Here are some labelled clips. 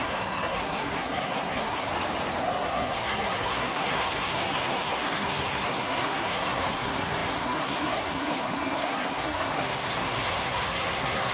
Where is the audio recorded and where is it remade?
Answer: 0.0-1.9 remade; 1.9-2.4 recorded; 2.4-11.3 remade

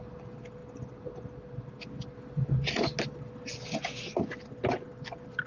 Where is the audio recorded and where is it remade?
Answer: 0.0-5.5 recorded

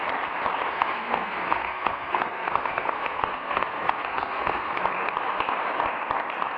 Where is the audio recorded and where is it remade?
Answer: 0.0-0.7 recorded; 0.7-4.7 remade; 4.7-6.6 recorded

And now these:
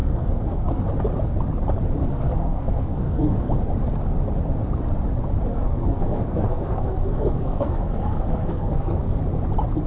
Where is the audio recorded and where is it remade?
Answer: 0.0-0.8 remade; 0.8-2.1 recorded; 2.1-3.5 remade; 3.5-5.5 recorded; 5.5-9.2 remade; 9.2-9.9 recorded

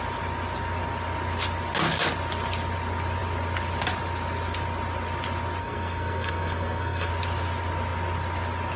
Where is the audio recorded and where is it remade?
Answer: 0.0-5.6 recorded; 5.6-7.1 remade; 7.1-8.8 recorded

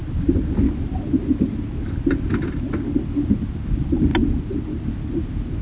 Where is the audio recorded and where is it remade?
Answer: 0.0-5.6 recorded

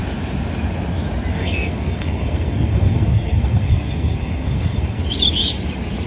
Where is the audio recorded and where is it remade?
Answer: 0.0-1.3 recorded; 1.3-5.0 remade; 5.0-6.1 recorded